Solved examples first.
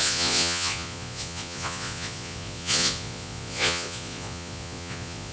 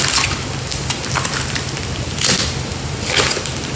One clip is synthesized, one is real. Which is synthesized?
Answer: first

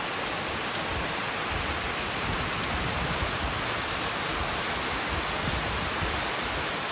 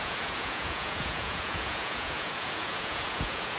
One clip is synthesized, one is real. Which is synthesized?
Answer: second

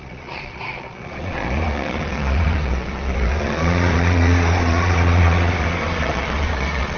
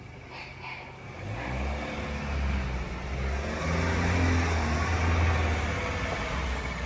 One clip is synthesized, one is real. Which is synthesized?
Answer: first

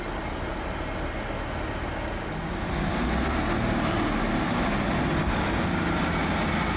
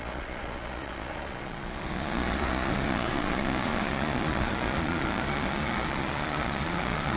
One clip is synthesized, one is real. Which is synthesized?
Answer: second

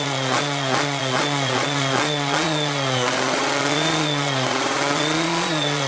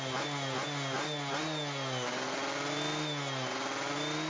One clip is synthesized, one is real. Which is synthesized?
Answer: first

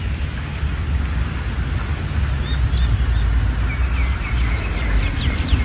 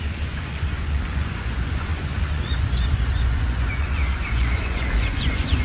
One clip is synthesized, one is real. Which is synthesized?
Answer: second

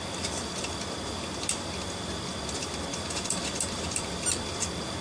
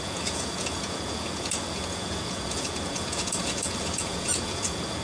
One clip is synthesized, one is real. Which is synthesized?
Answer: second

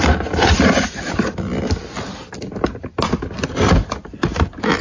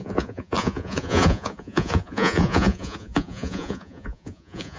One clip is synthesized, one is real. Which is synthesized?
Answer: second